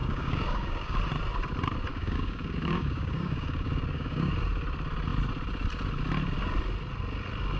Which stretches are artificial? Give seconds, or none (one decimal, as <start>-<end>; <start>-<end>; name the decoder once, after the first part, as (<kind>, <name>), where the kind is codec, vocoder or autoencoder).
0.0-1.0 (codec, DAC); 1.9-4.3